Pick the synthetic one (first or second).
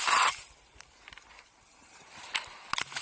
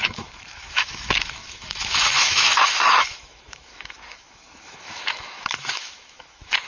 second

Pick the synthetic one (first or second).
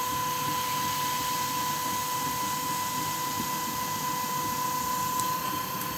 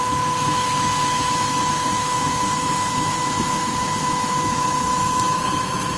second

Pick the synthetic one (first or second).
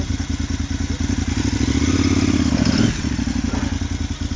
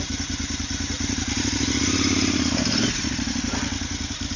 second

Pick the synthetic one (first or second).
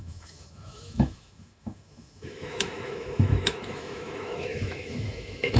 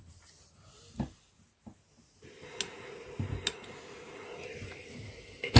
first